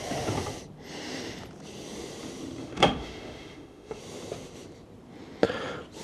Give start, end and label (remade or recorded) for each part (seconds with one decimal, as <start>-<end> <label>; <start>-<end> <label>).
0.0-2.6 recorded; 2.6-4.0 remade; 4.0-6.0 recorded